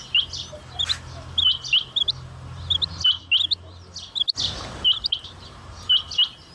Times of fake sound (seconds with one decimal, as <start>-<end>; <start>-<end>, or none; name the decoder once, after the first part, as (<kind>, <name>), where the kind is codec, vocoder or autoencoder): none